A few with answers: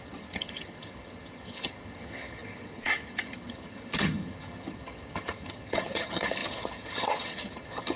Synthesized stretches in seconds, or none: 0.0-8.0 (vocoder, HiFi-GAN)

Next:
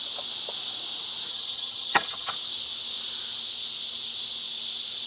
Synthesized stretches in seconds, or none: 1.3-2.3 (vocoder, HiFi-GAN)

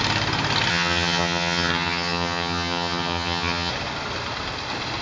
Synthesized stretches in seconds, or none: 0.7-3.7 (vocoder, HiFi-GAN)

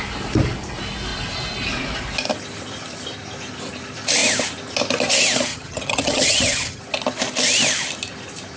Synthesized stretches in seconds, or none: 5.5-6.8 (vocoder, HiFi-GAN)

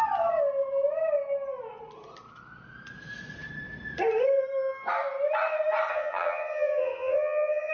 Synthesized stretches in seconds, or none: 5.9-7.7 (vocoder, HiFi-GAN)

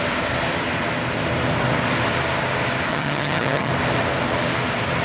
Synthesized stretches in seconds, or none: 2.9-3.7 (vocoder, HiFi-GAN)

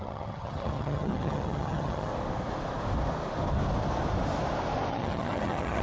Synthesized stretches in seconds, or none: 0.0-2.1 (vocoder, HiFi-GAN); 4.9-5.8

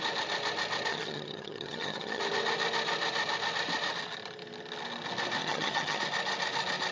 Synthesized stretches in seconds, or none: 0.9-2.2 (vocoder, HiFi-GAN); 5.4-6.0